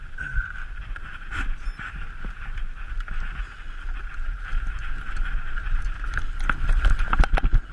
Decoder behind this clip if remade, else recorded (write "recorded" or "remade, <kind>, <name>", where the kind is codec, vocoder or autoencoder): recorded